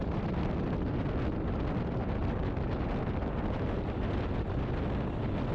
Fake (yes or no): no